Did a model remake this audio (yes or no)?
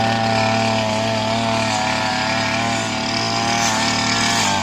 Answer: no